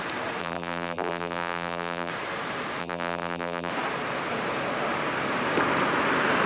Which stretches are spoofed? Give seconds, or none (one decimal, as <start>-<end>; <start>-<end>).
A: 0.4-2.1; 2.8-3.7